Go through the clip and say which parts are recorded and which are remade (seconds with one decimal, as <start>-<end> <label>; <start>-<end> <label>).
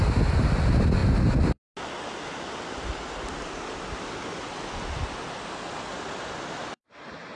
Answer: 0.0-7.4 recorded